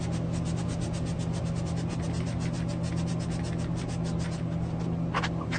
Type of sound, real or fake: real